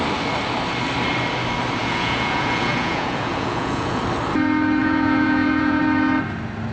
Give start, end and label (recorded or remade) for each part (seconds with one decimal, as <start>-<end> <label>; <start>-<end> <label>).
0.0-1.8 recorded; 1.8-4.0 remade; 4.0-4.8 recorded; 4.8-5.8 remade; 5.8-6.7 recorded